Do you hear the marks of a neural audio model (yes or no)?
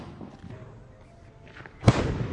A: no